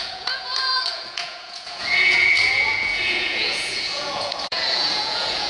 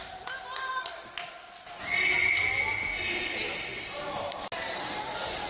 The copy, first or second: first